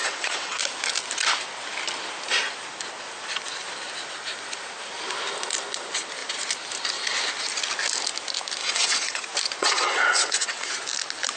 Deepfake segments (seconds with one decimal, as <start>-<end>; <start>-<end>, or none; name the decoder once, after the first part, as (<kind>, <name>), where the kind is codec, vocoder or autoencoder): 0.0-0.6 (vocoder, WaveNeXt); 8.6-9.2; 9.6-10.7